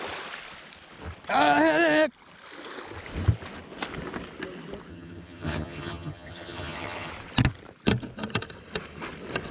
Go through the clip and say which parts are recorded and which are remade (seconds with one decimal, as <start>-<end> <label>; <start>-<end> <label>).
0.0-4.9 recorded; 4.9-7.1 remade; 7.1-9.5 recorded